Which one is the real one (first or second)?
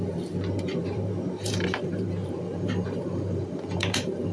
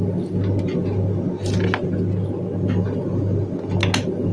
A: second